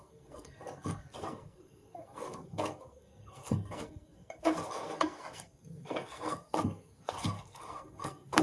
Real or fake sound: fake